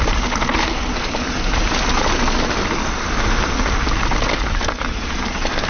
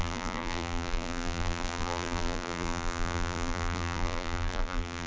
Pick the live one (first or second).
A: first